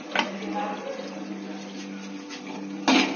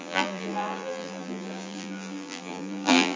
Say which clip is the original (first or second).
first